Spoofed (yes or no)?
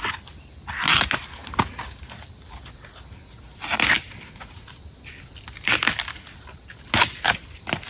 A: no